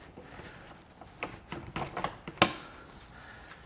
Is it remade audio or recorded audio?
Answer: recorded